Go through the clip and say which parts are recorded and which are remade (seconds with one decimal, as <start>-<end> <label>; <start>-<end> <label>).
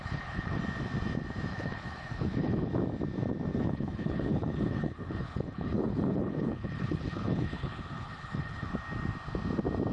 0.0-0.6 remade; 0.6-1.5 recorded; 1.5-2.7 remade; 2.7-3.5 recorded; 3.5-8.7 remade; 8.7-9.9 recorded